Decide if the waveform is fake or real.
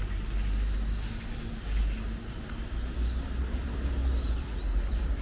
real